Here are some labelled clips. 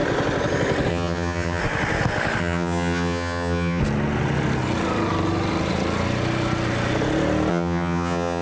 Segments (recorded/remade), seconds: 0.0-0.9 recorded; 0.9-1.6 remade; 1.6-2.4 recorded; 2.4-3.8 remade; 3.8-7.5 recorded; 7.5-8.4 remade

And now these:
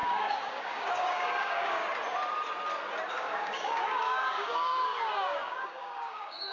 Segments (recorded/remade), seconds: 0.0-1.8 remade; 1.8-3.1 recorded; 3.1-6.5 remade

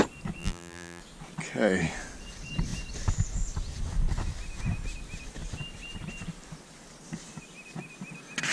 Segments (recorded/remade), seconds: 0.0-0.4 recorded; 0.4-1.0 remade; 1.0-8.5 recorded

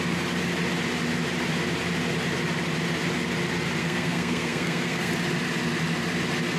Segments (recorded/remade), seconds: 0.0-3.8 recorded; 3.8-5.1 remade; 5.1-6.6 recorded